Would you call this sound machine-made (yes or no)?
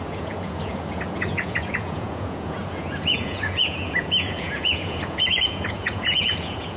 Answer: yes